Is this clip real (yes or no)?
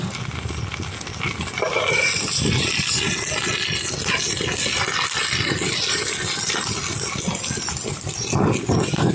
yes